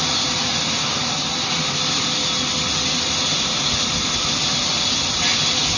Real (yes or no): yes